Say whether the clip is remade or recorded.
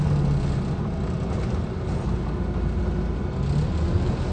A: recorded